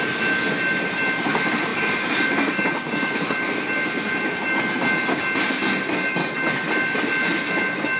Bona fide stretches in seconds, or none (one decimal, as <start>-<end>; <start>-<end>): 0.0-8.0